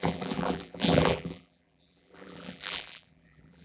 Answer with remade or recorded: remade